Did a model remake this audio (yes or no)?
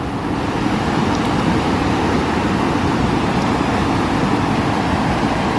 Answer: no